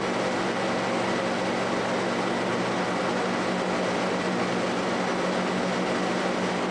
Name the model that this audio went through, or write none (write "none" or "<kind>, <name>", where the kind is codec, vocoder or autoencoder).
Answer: none